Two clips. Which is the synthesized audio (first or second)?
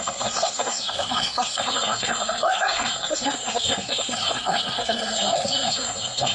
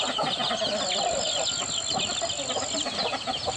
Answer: first